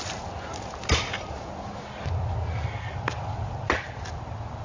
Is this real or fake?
real